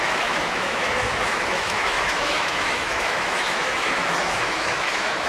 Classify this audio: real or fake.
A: fake